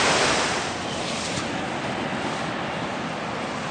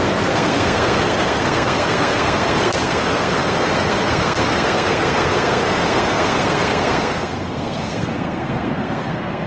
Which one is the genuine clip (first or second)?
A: first